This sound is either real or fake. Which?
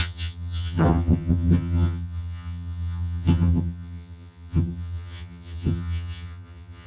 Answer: fake